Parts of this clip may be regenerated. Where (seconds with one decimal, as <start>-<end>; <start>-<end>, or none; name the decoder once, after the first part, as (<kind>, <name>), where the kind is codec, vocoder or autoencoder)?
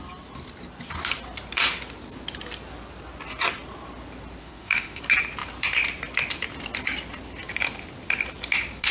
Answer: 4.4-5.0 (autoencoder, DAC-VAE)